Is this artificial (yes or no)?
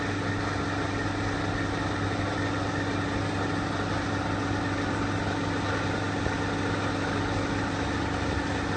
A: no